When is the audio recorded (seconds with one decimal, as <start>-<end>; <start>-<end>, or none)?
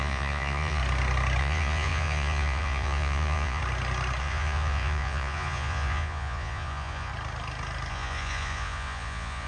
0.8-1.4; 3.6-4.2; 7.1-7.9